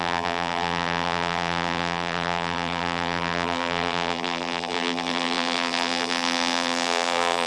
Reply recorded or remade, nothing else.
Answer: remade